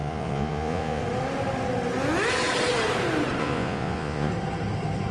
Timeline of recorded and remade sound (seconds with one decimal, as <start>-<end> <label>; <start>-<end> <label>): 0.0-1.0 remade; 1.0-3.4 recorded; 3.4-4.3 remade; 4.3-5.1 recorded